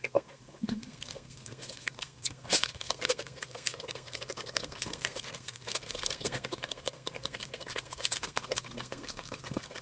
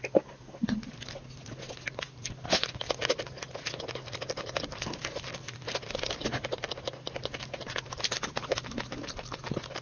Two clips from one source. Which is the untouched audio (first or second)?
second